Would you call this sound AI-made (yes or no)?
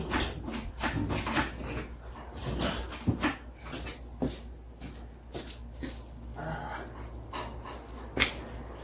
no